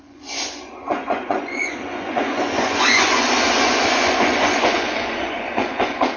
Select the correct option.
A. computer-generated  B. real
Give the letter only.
A